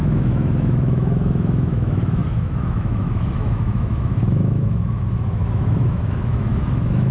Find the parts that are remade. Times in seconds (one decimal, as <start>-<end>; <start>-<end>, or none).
0.0-7.1